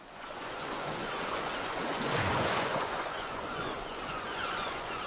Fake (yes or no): yes